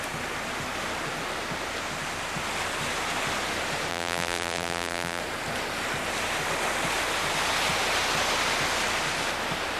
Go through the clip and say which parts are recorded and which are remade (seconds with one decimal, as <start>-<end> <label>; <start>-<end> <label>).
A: 0.0-3.9 recorded; 3.9-5.2 remade; 5.2-9.8 recorded